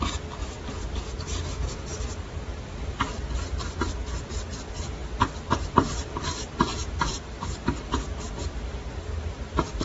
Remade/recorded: recorded